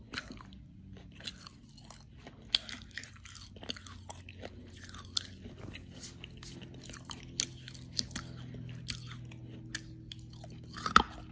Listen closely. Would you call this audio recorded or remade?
recorded